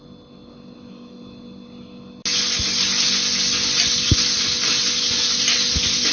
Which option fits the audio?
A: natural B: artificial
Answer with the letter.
A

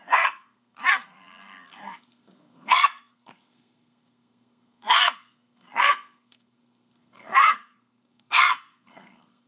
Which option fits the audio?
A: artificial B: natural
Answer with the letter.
A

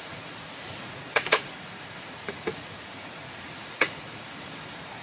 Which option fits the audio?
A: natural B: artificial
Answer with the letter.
B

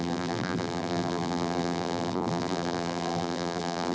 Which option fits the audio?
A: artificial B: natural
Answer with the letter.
A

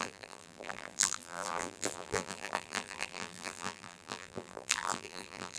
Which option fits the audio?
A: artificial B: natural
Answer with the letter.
A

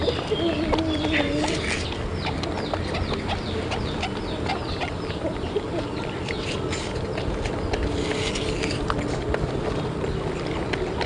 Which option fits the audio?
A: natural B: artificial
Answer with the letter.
A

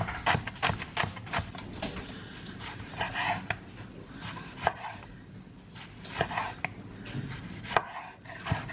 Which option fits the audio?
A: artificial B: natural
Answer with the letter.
B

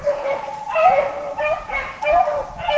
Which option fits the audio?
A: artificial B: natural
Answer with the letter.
B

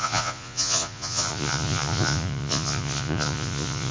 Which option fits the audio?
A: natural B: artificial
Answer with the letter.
B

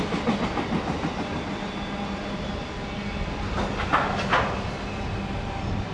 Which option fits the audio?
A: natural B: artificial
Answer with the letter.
A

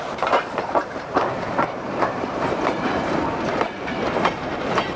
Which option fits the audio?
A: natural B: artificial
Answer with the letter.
B